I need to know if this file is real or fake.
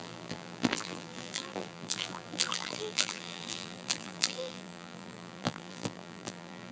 fake